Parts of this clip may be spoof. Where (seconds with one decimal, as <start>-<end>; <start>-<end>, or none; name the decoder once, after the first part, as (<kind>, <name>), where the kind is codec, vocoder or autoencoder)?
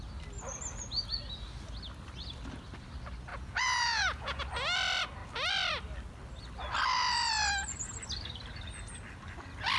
3.3-4.4 (vocoder, Vocos)